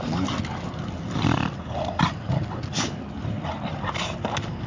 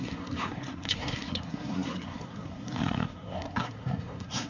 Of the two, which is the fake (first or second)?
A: second